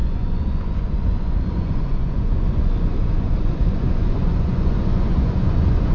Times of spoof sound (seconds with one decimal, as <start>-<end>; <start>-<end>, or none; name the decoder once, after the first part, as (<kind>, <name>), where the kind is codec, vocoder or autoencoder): 0.0-5.9 (vocoder, Vocos)